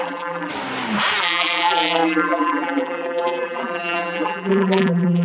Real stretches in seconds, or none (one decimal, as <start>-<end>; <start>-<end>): 0.5-1.2